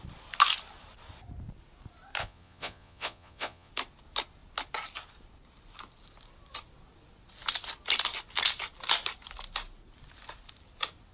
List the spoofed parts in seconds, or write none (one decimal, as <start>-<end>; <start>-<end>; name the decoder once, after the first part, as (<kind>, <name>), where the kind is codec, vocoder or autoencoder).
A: 2.2-3.7 (vocoder, Vocos)